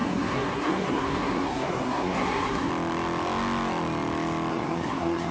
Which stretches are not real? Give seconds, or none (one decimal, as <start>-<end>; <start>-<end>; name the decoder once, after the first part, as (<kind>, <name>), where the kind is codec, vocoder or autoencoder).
0.0-2.7 (codec, SNAC); 4.5-5.3